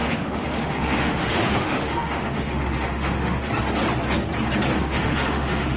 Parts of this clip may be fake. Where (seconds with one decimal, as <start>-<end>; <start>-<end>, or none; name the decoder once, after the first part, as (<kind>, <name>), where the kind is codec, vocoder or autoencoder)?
0.0-3.5 (autoencoder, DAC-VAE); 4.8-5.8